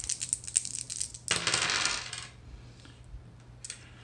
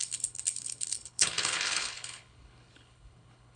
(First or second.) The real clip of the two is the first